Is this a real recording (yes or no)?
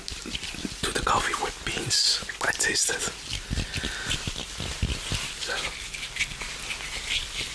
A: yes